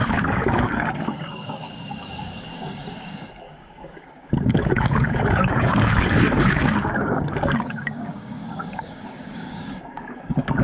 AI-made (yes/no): yes